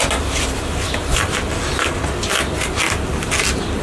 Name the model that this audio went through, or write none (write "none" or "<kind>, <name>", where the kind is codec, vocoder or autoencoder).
none